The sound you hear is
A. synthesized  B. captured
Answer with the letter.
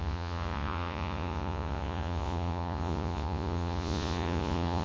A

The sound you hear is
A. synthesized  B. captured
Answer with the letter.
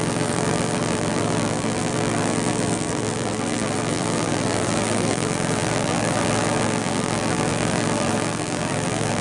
A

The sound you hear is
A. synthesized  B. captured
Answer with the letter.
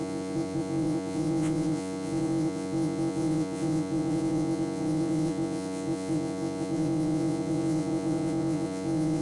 A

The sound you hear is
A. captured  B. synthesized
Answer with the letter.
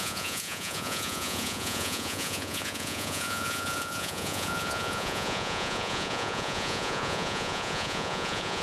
B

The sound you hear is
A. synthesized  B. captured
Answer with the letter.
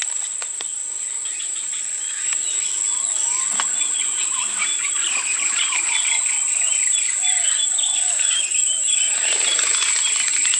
B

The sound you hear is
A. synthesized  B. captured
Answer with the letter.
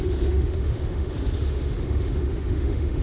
A